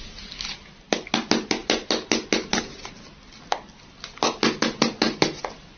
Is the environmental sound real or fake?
real